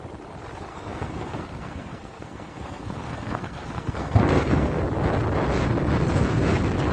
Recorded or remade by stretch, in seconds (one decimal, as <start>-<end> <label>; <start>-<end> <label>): 0.0-0.7 recorded; 0.7-4.8 remade; 4.8-6.9 recorded

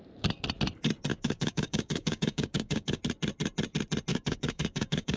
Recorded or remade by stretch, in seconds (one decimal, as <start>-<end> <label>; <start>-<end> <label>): 0.0-1.1 recorded; 1.1-3.0 remade; 3.0-4.1 recorded; 4.1-5.2 remade

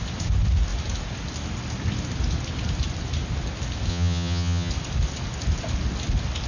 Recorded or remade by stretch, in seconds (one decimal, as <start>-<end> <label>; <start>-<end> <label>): 0.0-3.9 recorded; 3.9-4.7 remade; 4.7-6.5 recorded

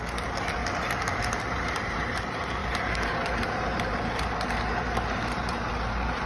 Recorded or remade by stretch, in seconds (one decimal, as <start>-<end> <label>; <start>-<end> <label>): 0.0-0.6 remade; 0.6-1.2 recorded; 1.2-6.3 remade